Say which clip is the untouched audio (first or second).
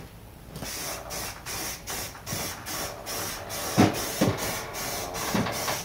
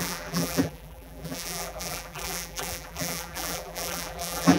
first